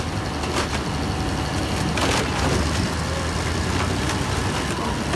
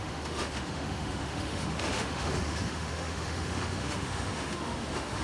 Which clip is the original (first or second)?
first